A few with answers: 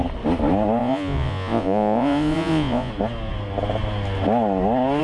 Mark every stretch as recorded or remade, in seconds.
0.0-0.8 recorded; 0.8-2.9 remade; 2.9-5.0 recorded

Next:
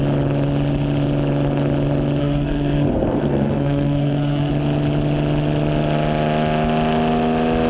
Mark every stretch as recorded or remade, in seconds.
0.0-2.2 recorded; 2.2-4.5 remade; 4.5-7.7 recorded

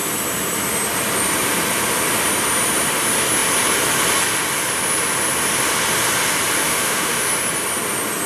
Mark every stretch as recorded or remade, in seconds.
0.0-6.6 recorded; 6.6-7.3 remade; 7.3-8.3 recorded